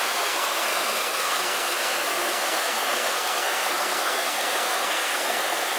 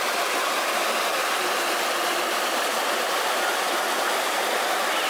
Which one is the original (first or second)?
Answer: second